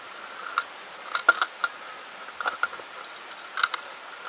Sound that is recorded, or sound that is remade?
recorded